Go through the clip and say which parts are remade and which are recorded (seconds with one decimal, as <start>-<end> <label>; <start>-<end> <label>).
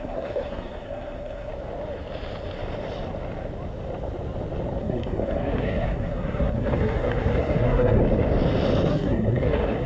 0.0-1.5 remade; 1.5-4.8 recorded; 4.8-8.0 remade; 8.0-8.9 recorded; 8.9-9.9 remade